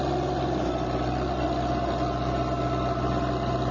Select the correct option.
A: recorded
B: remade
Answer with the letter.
A